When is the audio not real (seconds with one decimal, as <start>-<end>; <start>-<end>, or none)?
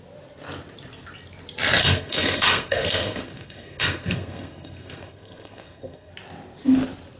1.8-6.1